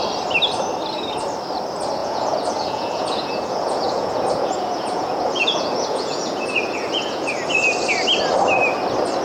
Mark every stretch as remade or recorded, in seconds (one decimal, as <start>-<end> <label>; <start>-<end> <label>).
0.0-2.0 recorded; 2.0-7.3 remade; 7.3-9.2 recorded